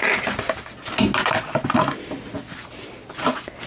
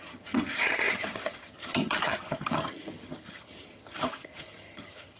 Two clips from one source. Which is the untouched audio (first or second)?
first